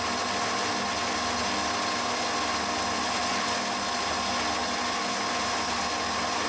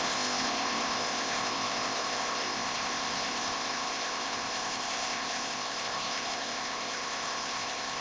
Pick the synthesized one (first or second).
second